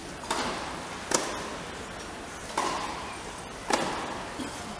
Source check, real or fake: real